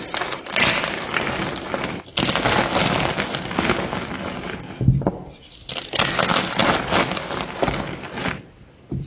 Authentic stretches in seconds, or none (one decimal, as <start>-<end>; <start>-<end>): 0.0-9.1